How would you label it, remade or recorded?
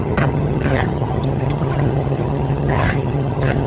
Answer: remade